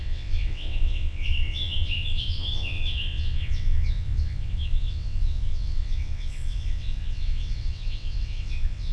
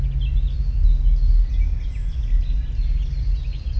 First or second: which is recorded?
second